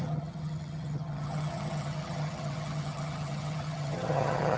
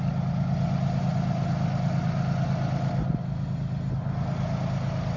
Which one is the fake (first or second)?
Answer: first